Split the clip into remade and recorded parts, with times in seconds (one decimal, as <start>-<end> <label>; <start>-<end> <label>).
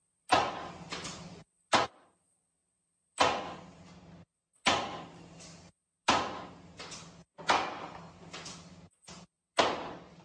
0.0-10.2 recorded